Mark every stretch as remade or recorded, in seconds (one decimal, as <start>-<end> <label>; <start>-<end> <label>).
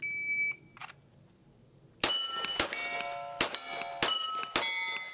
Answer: 0.0-5.1 recorded